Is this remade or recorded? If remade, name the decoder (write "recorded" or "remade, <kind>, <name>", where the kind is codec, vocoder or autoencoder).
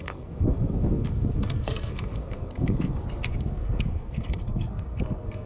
remade, codec, SNAC